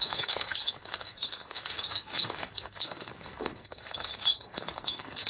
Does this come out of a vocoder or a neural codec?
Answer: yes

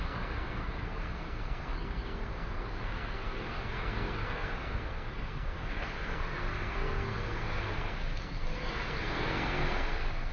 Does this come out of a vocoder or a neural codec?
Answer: yes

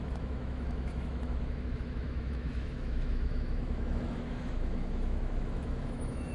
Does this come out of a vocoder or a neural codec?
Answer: yes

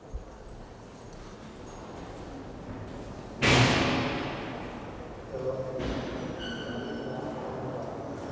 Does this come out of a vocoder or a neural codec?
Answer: no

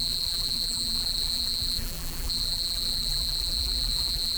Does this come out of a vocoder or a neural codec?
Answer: yes